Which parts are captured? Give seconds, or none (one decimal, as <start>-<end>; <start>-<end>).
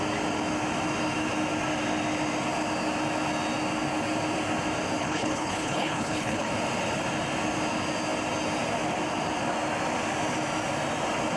0.0-5.0; 6.5-11.4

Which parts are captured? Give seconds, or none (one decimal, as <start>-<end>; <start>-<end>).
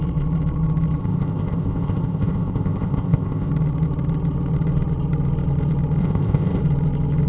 0.0-1.0; 3.5-6.0; 6.6-7.3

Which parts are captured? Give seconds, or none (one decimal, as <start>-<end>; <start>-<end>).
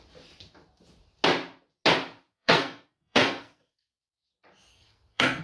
0.0-2.3; 3.9-4.7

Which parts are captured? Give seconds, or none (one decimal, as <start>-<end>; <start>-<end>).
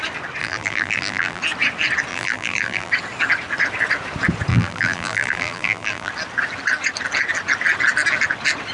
0.0-0.4; 1.4-2.1; 2.9-4.5; 6.1-8.7